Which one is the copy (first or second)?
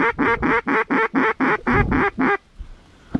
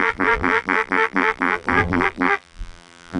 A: second